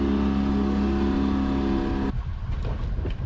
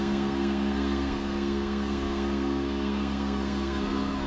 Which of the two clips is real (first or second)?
first